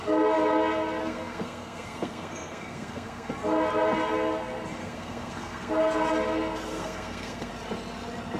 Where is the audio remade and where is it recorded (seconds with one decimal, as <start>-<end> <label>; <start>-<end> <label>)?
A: 0.0-1.0 recorded; 1.0-3.3 remade; 3.3-4.8 recorded; 4.8-5.7 remade; 5.7-6.7 recorded; 6.7-7.5 remade; 7.5-8.4 recorded